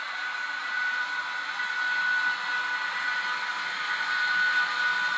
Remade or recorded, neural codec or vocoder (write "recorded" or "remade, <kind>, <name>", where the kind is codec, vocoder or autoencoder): recorded